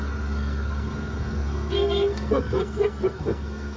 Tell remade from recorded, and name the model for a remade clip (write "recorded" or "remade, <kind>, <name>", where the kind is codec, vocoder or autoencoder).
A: remade, codec, SNAC